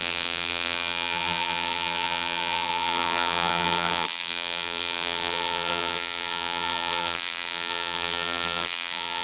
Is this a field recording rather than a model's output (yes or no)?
no